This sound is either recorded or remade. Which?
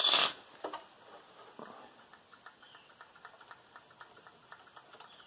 recorded